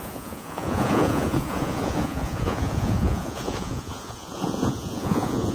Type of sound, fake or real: fake